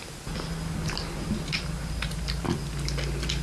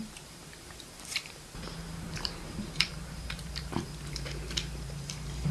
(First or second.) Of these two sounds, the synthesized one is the second